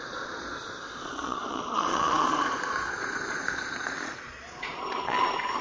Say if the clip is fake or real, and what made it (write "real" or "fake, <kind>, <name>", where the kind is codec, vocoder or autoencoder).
fake, vocoder, Vocos